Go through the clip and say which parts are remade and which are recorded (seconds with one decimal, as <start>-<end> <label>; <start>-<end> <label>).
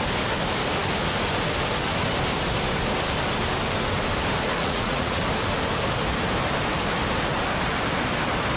0.0-4.6 recorded; 4.6-5.2 remade; 5.2-8.6 recorded